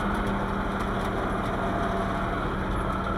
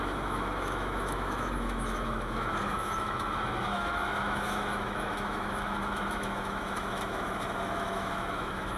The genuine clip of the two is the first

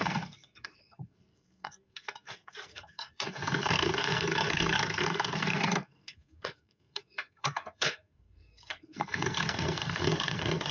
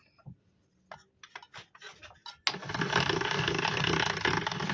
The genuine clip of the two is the second